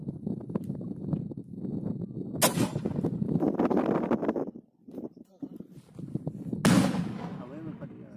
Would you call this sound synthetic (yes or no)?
no